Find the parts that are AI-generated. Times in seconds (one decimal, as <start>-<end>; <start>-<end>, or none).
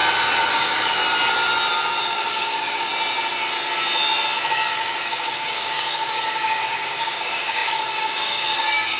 0.5-1.0; 2.0-2.9; 4.5-9.0